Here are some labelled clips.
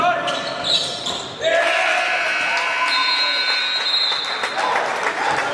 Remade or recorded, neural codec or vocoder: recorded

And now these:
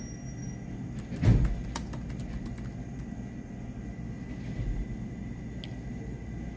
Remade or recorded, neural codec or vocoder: recorded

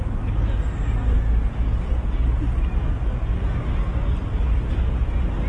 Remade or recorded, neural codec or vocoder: recorded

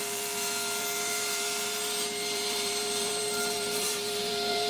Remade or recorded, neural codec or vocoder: remade, vocoder, BigVGAN v2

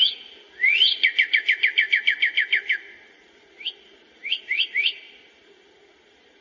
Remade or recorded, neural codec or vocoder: recorded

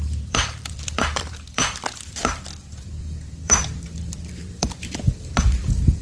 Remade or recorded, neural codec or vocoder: remade, vocoder, BigVGAN v2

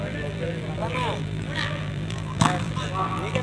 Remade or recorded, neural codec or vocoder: remade, vocoder, BigVGAN v2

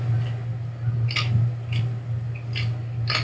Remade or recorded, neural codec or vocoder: recorded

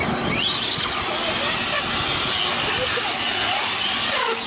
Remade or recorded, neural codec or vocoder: recorded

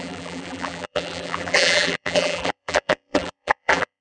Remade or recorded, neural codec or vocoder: remade, vocoder, BigVGAN v2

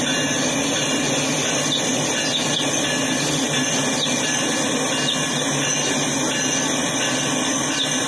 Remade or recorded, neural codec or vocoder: recorded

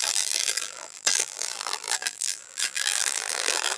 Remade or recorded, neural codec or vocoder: remade, vocoder, BigVGAN v2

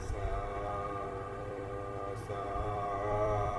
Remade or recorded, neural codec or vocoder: remade, vocoder, BigVGAN v2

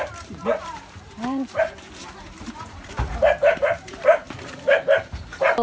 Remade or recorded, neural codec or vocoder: remade, vocoder, BigVGAN v2